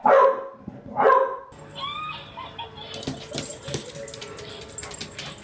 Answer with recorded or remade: recorded